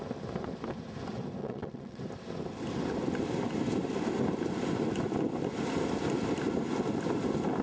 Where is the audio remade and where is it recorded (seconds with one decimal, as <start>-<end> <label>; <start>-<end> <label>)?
0.0-1.4 recorded; 1.4-2.0 remade; 2.0-7.6 recorded